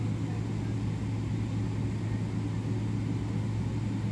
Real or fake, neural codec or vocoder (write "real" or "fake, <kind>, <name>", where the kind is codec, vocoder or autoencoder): real